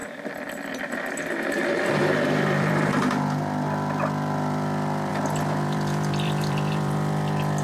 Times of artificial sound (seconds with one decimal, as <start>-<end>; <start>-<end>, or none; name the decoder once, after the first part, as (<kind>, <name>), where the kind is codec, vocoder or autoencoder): 0.0-7.6 (vocoder, BigVGAN v2)

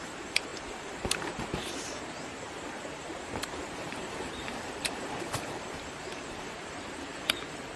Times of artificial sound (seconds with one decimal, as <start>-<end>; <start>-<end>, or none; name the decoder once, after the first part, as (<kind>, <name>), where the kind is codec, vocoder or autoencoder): 0.0-7.8 (vocoder, BigVGAN v2)

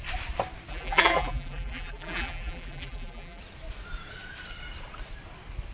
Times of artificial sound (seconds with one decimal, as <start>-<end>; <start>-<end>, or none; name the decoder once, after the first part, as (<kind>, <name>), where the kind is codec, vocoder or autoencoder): 0.7-3.4 (vocoder, BigVGAN v2)

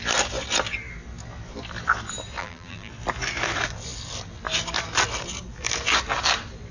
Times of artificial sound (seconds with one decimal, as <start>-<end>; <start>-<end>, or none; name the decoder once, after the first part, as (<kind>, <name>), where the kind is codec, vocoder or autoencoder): 2.4-2.9 (vocoder, BigVGAN v2)

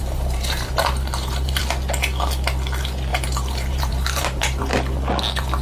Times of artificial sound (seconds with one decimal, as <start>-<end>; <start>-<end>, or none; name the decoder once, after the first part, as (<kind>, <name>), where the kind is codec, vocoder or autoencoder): 0.0-1.6 (vocoder, BigVGAN v2); 3.1-4.6

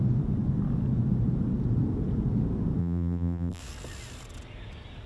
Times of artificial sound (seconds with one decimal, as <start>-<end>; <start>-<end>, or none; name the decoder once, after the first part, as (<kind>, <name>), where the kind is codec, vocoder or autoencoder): 2.8-3.6 (vocoder, BigVGAN v2)

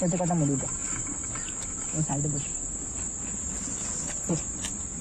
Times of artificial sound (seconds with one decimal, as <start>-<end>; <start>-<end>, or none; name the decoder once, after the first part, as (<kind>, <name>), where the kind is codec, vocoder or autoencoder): none